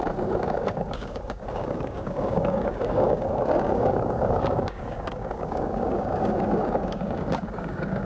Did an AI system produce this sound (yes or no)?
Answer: yes